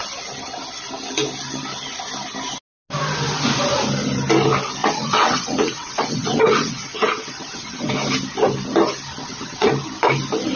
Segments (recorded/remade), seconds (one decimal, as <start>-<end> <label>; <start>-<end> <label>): 0.0-4.8 recorded; 4.8-7.9 remade; 7.9-9.2 recorded; 9.2-9.7 remade; 9.7-10.6 recorded